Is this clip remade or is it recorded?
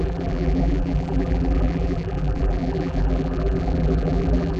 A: remade